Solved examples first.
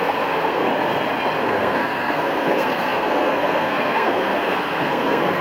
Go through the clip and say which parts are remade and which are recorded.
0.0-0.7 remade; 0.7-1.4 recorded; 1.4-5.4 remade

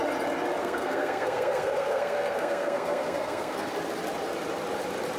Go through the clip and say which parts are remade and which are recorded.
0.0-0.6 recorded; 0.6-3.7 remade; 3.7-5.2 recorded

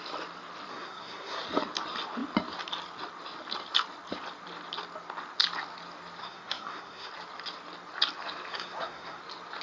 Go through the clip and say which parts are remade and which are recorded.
0.0-0.7 recorded; 0.7-1.4 remade; 1.4-6.2 recorded; 6.2-7.1 remade; 7.1-8.5 recorded; 8.5-9.2 remade; 9.2-9.6 recorded

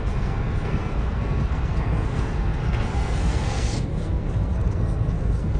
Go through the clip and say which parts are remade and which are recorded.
0.0-5.6 remade